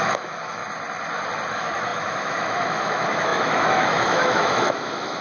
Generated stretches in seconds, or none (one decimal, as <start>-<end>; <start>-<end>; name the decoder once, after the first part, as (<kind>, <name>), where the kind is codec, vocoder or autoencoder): 0.0-0.6 (autoencoder, DAC-VAE); 1.5-5.2